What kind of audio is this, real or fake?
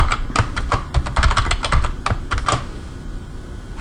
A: real